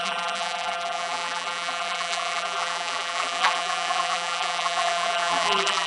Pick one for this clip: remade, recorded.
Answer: remade